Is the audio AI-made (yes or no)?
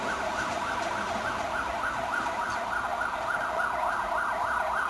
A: no